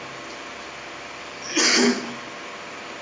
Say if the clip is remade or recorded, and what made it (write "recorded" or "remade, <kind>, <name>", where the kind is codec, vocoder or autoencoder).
recorded